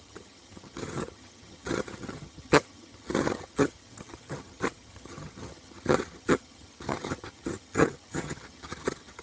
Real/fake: fake